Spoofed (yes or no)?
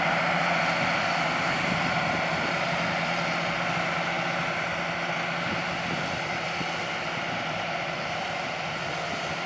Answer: no